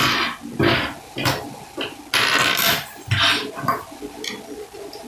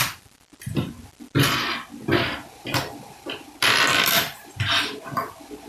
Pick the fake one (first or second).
second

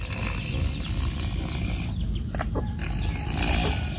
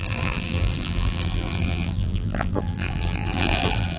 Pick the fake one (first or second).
second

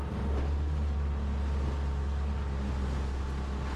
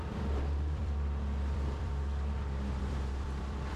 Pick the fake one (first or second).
second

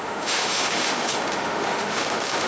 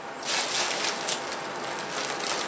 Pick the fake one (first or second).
first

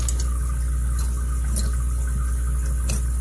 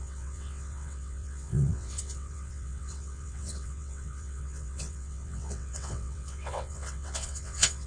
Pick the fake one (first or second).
second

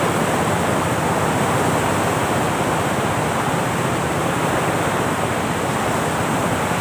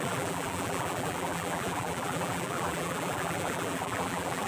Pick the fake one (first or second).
second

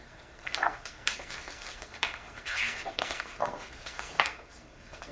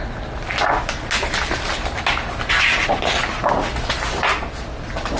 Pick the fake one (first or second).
first